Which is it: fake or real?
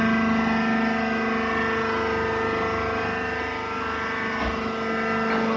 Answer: real